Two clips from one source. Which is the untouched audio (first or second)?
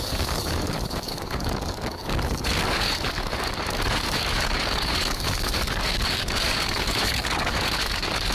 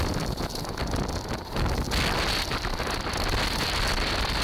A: second